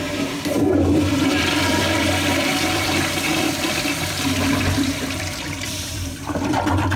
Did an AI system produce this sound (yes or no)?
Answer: yes